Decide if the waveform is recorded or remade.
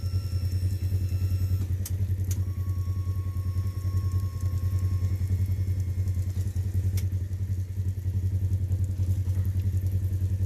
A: recorded